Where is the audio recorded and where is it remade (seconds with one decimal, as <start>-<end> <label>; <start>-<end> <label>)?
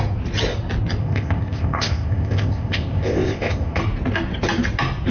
0.0-1.0 recorded; 1.0-3.8 remade; 3.8-5.1 recorded